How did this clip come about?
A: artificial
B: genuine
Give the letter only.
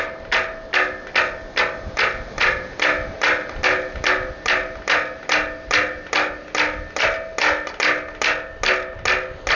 B